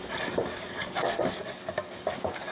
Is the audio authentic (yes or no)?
no